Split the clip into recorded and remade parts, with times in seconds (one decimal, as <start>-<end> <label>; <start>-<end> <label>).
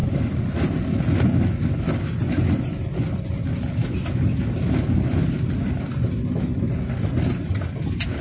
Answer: 0.0-8.2 recorded